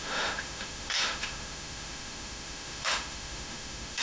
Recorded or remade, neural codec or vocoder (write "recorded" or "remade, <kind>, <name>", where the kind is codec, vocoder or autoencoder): remade, autoencoder, DAC-VAE